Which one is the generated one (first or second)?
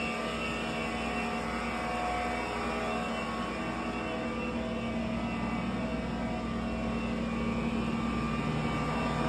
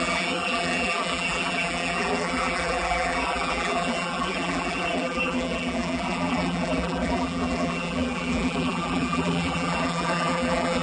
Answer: second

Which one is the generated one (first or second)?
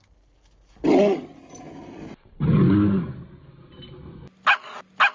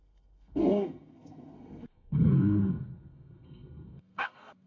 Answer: second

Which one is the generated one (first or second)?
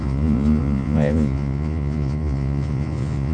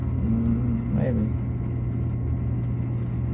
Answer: first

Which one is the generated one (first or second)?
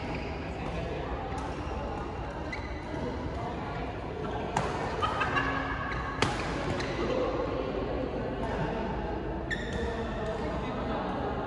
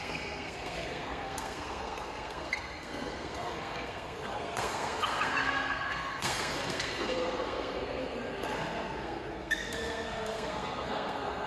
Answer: second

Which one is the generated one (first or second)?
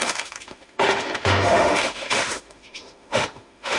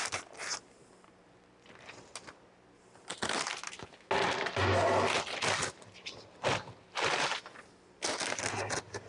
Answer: first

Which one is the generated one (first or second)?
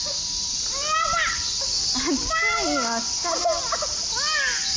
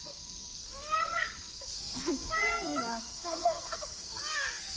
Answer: second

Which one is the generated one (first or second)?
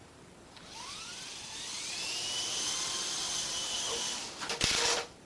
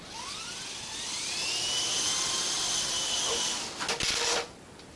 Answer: first